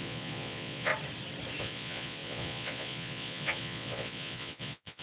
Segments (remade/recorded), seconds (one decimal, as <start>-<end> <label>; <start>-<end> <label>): 0.0-0.9 remade; 0.9-1.6 recorded; 1.6-5.0 remade